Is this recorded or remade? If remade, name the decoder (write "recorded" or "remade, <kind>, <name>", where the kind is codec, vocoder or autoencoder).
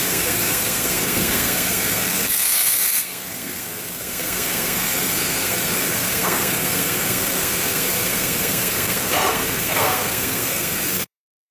remade, codec, SNAC